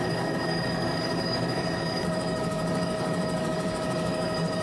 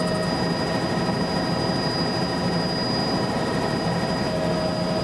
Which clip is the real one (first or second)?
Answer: second